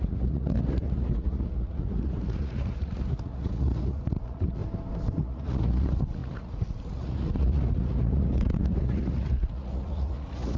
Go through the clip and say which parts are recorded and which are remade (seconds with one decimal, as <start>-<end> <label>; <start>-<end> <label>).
0.0-4.6 remade; 4.6-5.2 recorded; 5.2-10.6 remade